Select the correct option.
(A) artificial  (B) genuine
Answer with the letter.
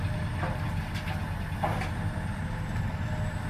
B